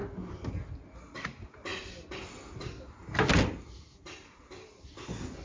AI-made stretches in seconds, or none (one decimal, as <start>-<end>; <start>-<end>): none